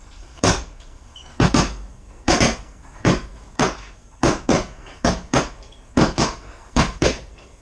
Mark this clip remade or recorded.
remade